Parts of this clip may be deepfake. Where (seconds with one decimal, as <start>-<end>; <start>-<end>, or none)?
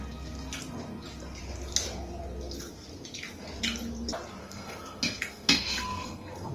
4.4-6.5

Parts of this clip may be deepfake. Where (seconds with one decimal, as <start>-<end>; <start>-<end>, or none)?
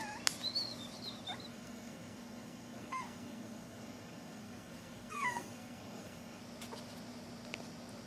1.5-6.4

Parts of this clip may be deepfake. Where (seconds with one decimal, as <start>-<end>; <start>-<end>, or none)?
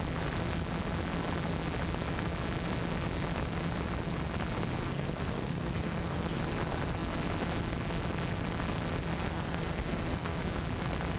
4.8-6.4; 9.1-10.4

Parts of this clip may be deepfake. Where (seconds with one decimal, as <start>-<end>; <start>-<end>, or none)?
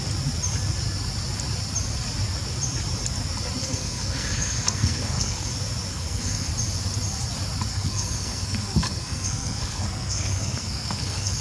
3.6-5.5; 5.9-6.5; 7.7-11.4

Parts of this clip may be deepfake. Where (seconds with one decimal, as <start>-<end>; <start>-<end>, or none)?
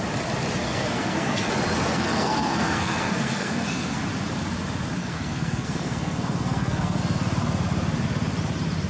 0.6-1.5; 1.9-4.0; 5.0-7.0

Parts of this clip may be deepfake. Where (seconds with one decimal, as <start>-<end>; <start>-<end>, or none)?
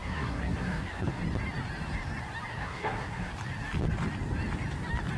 0.0-1.2; 2.5-3.3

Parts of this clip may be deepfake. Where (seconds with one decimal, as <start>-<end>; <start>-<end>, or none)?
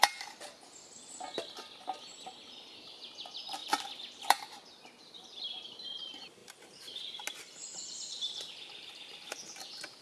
none